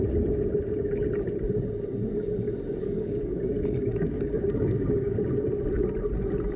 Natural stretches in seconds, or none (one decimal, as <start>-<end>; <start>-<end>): 0.0-2.8; 5.2-6.6